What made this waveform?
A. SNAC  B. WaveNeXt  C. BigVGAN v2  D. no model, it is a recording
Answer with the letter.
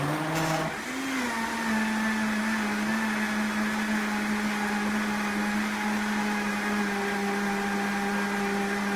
D